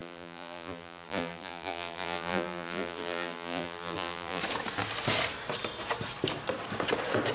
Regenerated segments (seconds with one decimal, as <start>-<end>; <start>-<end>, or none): 0.0-4.4